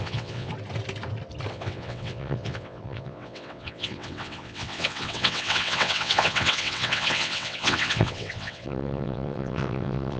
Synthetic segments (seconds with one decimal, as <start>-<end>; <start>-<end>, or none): 0.0-0.5; 1.5-10.2

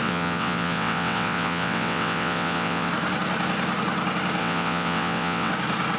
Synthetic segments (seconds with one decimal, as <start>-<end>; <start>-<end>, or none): 0.0-2.9; 4.4-5.5

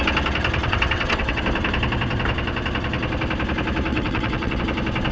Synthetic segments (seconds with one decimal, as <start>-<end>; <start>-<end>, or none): 0.6-1.4; 3.9-4.6

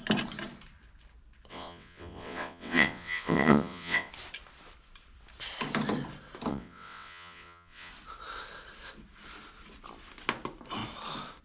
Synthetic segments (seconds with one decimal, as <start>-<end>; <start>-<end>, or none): 1.5-4.1; 6.5-7.9

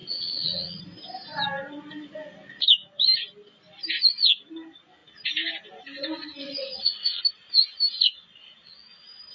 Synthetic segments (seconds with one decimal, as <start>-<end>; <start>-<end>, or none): 0.0-0.8; 6.4-7.2

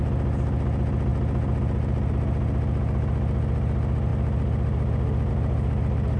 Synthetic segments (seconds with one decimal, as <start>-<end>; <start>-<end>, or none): none

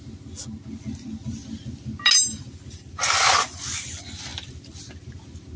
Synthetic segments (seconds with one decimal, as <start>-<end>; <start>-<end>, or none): none

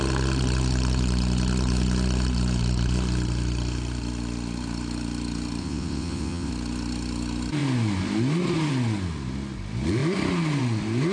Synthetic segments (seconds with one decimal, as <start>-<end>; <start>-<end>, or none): 5.6-6.5